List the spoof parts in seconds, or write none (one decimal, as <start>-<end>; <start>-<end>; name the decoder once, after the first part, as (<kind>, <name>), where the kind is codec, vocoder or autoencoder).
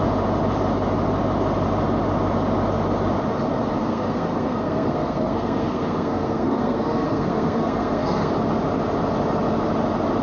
3.8-8.3 (codec, SNAC)